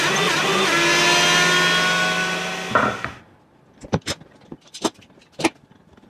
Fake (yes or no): no